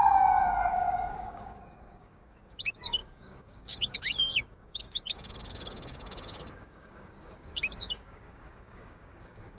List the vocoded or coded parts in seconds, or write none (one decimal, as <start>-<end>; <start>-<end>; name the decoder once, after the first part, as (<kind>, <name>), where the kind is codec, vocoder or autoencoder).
0.0-9.6 (codec, DAC)